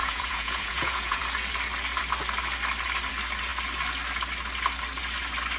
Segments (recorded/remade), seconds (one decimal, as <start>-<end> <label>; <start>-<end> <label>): 0.0-1.2 remade; 1.2-5.6 recorded